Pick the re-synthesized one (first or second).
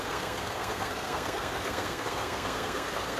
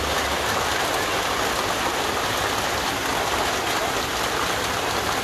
first